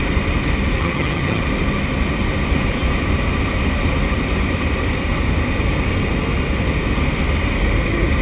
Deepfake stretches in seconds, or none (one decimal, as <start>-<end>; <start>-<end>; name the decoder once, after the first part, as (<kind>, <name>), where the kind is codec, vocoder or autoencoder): 0.8-1.4 (vocoder, HiFi-GAN)